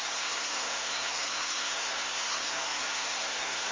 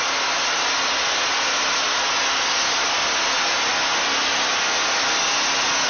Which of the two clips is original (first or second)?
second